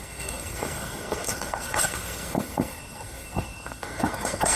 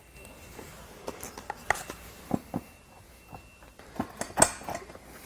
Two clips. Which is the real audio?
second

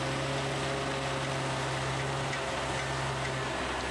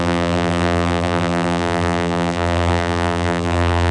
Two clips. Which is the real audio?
first